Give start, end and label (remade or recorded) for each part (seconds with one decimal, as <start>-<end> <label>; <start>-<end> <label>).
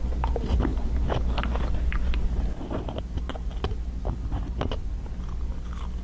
0.0-6.0 recorded